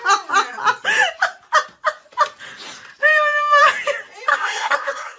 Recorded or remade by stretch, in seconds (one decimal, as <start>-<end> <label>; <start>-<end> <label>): 0.0-4.3 recorded; 4.3-5.2 remade